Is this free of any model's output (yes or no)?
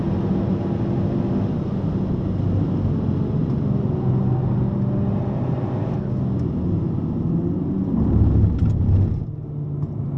yes